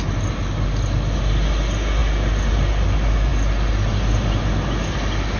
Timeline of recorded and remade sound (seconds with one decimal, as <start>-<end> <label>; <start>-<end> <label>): 0.0-5.4 recorded